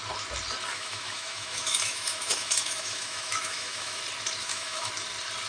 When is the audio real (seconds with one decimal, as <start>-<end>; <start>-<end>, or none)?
0.0-0.7; 4.0-4.4; 4.9-5.5